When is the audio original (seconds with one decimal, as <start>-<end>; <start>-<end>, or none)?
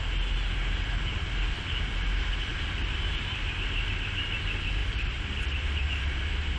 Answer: 0.0-6.6